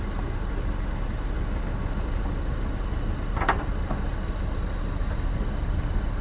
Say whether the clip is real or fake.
real